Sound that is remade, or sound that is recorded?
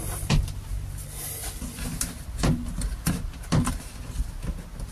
recorded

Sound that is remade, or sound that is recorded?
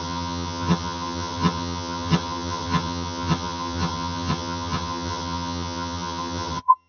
remade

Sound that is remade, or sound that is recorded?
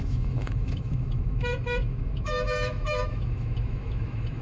remade